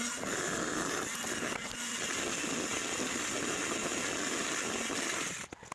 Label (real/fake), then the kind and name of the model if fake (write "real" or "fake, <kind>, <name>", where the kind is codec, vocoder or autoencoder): real